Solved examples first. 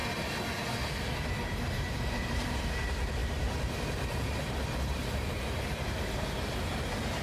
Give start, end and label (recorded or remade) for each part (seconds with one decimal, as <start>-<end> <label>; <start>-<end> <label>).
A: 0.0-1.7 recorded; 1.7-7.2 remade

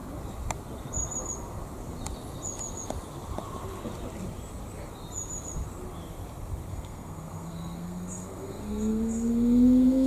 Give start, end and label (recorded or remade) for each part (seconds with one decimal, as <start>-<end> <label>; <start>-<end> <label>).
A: 0.0-6.7 recorded; 6.7-10.1 remade

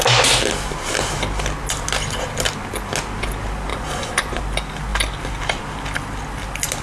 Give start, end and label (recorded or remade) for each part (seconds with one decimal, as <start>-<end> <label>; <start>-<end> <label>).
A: 0.0-3.7 recorded; 3.7-4.4 remade; 4.4-6.8 recorded